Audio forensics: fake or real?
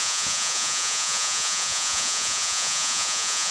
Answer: fake